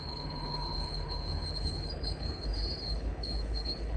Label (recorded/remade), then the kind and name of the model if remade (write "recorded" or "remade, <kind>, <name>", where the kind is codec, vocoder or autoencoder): remade, codec, HILCodec